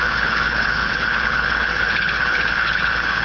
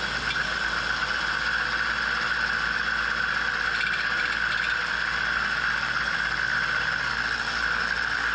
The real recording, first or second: second